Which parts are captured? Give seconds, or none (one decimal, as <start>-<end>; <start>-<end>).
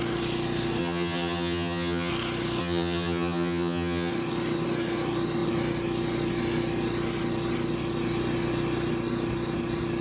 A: 0.0-0.8; 2.1-2.6; 4.1-10.0